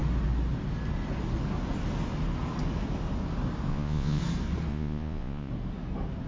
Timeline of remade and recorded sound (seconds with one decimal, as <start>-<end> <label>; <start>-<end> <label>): 0.0-3.7 recorded; 3.7-4.2 remade; 4.2-4.7 recorded; 4.7-5.5 remade; 5.5-6.3 recorded

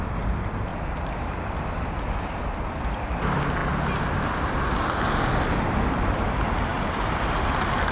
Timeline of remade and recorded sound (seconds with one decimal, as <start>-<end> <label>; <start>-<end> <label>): 0.0-0.7 remade; 0.7-2.4 recorded; 2.4-3.6 remade; 3.6-5.7 recorded; 5.7-7.9 remade

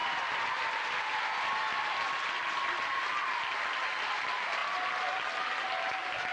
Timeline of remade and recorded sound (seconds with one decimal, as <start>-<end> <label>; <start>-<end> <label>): 0.0-6.3 recorded

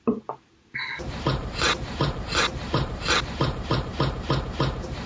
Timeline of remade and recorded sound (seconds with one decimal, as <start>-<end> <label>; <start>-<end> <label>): 0.0-1.4 recorded; 1.4-3.9 remade; 3.9-5.1 recorded